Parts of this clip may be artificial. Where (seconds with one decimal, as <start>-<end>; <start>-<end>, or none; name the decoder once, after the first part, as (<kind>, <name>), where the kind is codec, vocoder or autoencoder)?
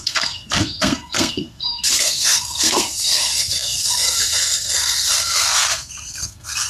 0.0-6.7 (codec, SNAC)